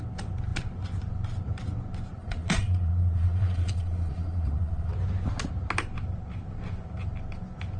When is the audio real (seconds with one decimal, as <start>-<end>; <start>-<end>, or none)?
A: 0.0-2.2; 4.9-7.8